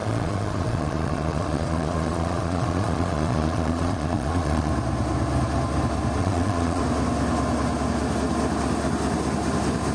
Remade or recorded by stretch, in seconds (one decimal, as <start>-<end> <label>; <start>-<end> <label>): 0.0-4.7 remade; 4.7-6.2 recorded; 6.2-6.8 remade; 6.8-9.9 recorded